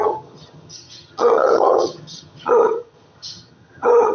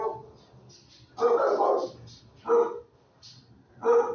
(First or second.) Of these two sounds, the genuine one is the second